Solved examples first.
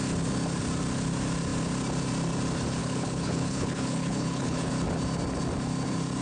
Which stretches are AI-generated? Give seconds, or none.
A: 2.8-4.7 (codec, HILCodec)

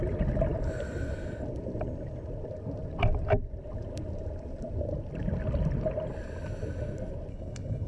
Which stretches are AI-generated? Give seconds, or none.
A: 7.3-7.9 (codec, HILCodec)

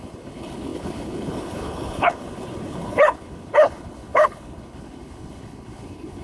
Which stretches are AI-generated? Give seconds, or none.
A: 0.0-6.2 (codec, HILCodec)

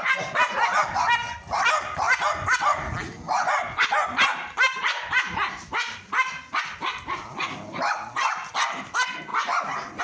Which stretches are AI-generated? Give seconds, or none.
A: none

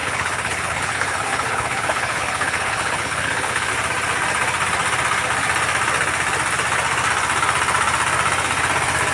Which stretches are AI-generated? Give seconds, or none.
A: 0.0-3.7 (codec, HILCodec)

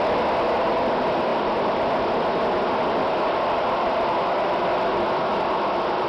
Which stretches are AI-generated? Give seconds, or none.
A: none